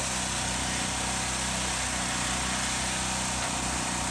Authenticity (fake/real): real